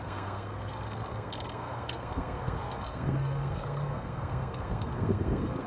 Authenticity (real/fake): fake